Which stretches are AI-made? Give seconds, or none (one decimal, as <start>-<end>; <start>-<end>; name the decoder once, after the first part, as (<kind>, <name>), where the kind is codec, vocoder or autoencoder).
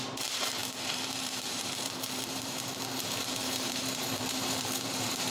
0.0-5.3 (vocoder, BigVGAN v2)